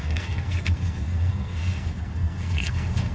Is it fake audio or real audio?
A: fake